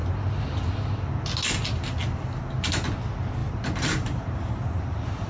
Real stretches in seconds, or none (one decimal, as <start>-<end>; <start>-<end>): 0.0-3.4